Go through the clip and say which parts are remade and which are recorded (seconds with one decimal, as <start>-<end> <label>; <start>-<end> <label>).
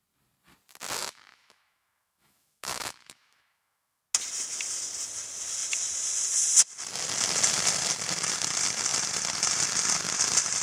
0.0-1.0 recorded; 1.0-4.0 remade; 4.0-10.6 recorded